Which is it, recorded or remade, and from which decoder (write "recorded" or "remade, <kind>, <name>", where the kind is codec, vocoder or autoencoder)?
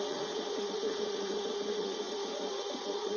remade, vocoder, Vocos